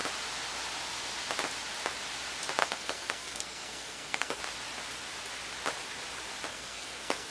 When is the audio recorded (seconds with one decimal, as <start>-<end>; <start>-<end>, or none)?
0.0-2.6; 4.4-6.5